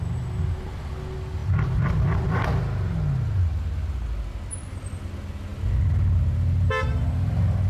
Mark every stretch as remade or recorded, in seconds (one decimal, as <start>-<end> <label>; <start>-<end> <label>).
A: 0.0-7.7 recorded